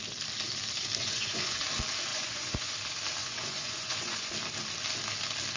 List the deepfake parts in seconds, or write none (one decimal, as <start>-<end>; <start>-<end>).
1.0-1.6; 2.1-2.7; 3.2-4.3